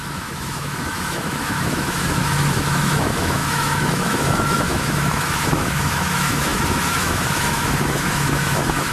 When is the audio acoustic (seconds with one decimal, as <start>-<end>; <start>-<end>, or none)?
none